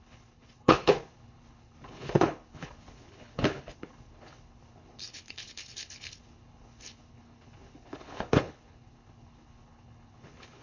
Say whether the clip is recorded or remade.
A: remade